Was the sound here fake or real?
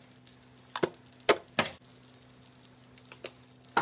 real